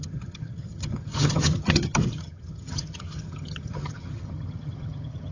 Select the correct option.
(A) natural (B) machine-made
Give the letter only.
B